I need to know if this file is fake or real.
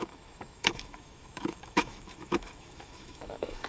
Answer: fake